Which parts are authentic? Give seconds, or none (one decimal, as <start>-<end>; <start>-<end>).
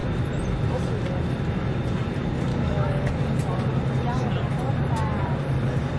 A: 0.0-2.5; 3.1-6.0